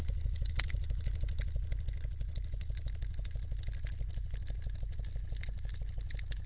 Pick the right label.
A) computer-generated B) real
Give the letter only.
B